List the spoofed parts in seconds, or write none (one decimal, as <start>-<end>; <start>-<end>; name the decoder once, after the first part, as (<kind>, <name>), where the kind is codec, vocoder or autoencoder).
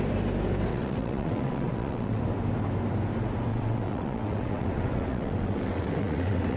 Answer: 0.7-2.2 (vocoder, WaveNeXt); 3.5-6.6